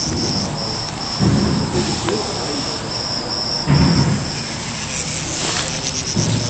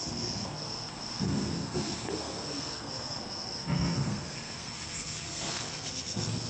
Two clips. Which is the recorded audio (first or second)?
first